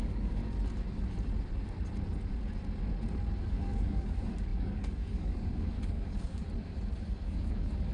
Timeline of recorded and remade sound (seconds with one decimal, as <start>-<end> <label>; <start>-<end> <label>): 0.0-0.4 remade; 0.4-3.4 recorded; 3.4-6.4 remade; 6.4-7.0 recorded; 7.0-7.9 remade